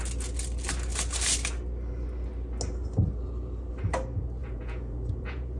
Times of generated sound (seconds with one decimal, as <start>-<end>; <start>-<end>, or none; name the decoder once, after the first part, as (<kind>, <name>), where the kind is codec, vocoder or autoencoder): 4.4-5.6 (vocoder, Vocos)